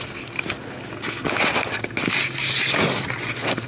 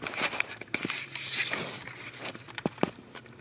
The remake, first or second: second